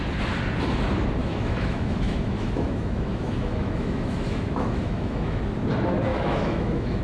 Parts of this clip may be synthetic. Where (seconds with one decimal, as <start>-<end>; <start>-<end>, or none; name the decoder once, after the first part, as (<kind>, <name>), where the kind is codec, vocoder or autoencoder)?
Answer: 1.2-5.4 (autoencoder, DAC-VAE); 6.1-7.0